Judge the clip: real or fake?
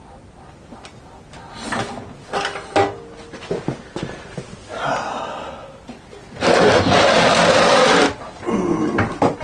real